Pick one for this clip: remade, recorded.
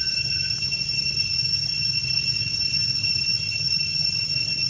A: recorded